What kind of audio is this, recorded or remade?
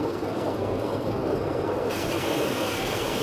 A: remade